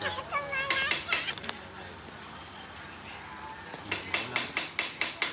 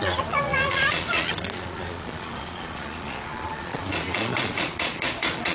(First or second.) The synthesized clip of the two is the second